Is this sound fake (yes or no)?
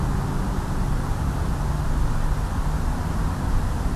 no